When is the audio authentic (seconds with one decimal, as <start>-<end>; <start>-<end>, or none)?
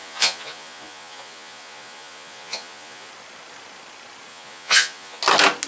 3.1-4.3; 5.2-5.7